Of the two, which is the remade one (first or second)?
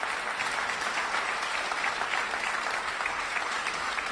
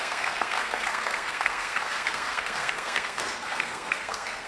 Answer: second